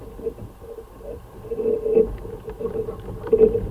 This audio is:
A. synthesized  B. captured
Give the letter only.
B